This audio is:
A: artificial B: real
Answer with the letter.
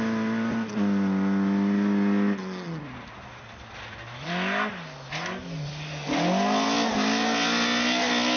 B